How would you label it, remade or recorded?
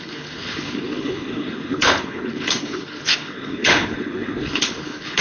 remade